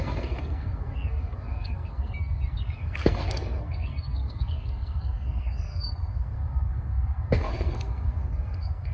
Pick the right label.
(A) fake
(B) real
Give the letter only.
A